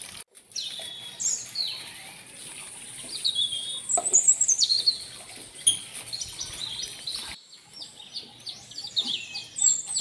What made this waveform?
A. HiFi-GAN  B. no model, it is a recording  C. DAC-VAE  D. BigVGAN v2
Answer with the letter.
B